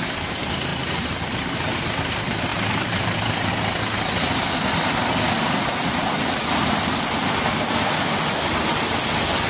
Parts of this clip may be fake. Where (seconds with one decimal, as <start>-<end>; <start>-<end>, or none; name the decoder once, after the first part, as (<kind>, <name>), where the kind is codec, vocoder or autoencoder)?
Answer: 0.7-2.1 (vocoder, BigVGAN v2); 2.5-3.5